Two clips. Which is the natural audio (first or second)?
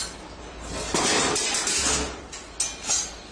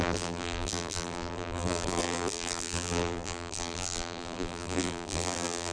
first